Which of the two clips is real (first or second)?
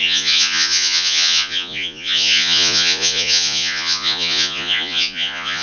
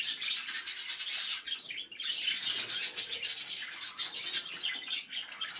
second